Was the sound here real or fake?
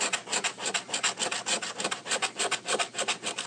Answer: real